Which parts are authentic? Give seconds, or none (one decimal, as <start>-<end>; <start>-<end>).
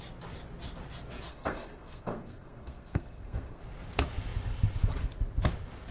0.0-1.3; 3.6-5.9